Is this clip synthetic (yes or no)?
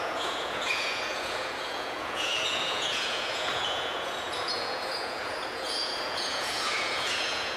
yes